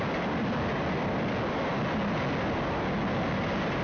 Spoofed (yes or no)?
no